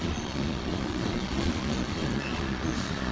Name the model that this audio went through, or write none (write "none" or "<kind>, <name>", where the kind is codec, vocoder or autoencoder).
vocoder, Vocos